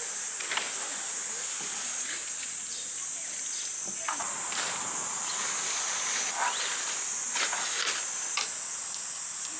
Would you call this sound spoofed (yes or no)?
no